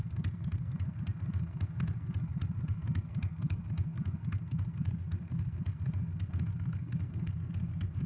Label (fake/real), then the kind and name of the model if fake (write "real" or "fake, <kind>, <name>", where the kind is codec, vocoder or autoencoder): fake, codec, SNAC